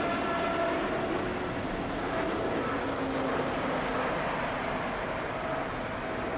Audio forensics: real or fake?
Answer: real